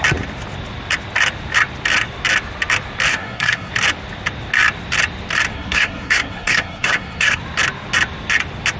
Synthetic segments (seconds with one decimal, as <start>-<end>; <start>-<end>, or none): 3.1-3.7; 5.5-7.4